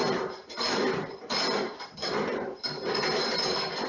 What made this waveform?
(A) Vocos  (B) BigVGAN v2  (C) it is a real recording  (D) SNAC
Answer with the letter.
B